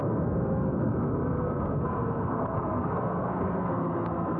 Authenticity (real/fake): fake